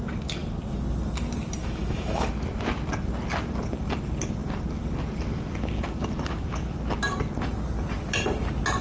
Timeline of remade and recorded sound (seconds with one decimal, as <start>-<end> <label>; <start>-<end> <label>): 0.0-1.6 recorded; 1.6-2.3 remade; 2.3-8.8 recorded